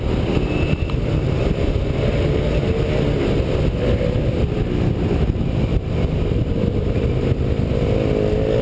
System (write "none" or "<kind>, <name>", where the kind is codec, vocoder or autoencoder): none